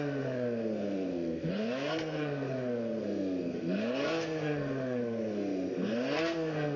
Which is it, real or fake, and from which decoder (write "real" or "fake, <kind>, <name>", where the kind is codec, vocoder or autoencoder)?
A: fake, codec, SNAC